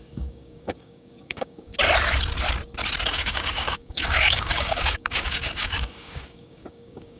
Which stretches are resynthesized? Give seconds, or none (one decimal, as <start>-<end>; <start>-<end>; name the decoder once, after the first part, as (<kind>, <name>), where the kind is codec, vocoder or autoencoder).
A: 0.0-1.7 (codec, DAC); 3.1-7.2